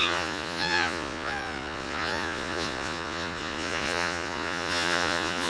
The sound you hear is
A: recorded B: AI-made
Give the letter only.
B